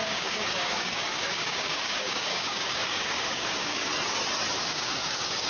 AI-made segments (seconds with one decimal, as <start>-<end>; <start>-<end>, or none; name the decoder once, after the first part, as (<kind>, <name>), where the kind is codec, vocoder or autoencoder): 0.0-3.9 (codec, DAC); 4.6-5.5